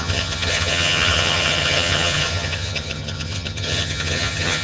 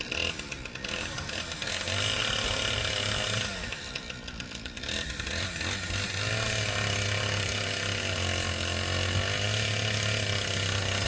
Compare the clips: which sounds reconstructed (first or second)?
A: first